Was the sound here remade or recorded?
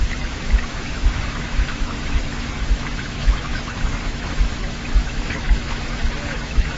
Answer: remade